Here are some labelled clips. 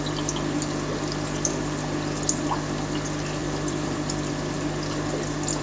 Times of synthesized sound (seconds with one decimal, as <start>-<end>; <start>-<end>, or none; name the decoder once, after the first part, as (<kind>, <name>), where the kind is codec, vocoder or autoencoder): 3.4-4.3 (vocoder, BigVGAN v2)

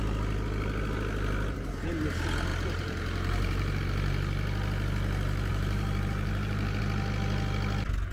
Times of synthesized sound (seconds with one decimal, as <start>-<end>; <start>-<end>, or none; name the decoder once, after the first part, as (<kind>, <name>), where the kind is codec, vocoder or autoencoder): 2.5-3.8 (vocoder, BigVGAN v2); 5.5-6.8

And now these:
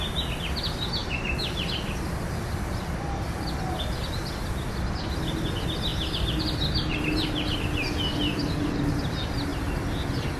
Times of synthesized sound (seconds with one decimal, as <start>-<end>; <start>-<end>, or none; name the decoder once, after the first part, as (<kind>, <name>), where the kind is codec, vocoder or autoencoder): 5.9-7.6 (vocoder, BigVGAN v2)

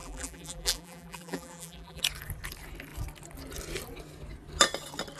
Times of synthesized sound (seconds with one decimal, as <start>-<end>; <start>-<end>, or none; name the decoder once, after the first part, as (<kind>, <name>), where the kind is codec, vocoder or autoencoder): 0.0-2.0 (vocoder, BigVGAN v2)